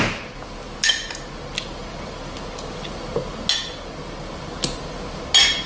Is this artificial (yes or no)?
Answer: no